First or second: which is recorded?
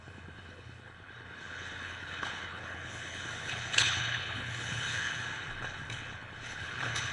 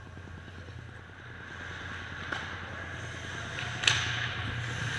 second